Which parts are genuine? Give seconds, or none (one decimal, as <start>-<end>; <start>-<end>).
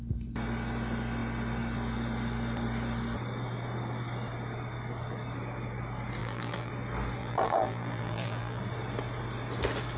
0.0-6.2; 6.7-7.2; 8.6-10.0